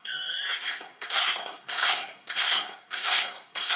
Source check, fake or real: fake